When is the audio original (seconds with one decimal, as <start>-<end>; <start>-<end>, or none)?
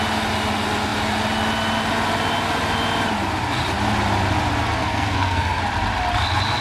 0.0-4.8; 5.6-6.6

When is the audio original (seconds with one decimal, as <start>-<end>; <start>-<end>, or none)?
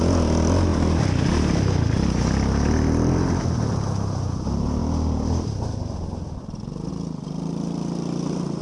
0.0-8.6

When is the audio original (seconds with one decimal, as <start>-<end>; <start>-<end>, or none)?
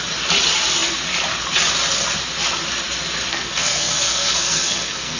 0.0-3.3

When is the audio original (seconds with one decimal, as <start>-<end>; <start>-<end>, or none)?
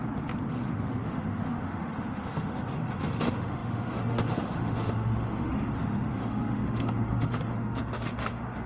0.0-0.5